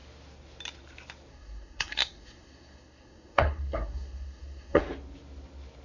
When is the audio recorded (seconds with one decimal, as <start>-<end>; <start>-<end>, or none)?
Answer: 0.0-1.3; 4.8-5.8